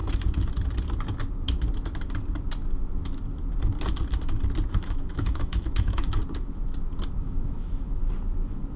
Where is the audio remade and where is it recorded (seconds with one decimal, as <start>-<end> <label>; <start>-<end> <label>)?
0.0-4.7 recorded; 4.7-6.2 remade; 6.2-7.2 recorded; 7.2-8.0 remade; 8.0-8.8 recorded